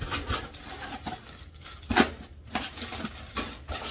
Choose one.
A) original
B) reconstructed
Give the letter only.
A